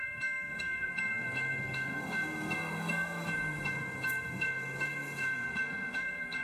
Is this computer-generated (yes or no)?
yes